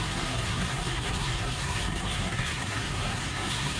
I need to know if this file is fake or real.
fake